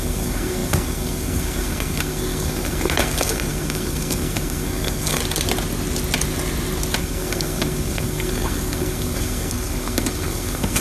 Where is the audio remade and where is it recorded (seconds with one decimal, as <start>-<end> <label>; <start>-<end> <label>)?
0.0-5.2 remade; 5.2-7.0 recorded; 7.0-10.8 remade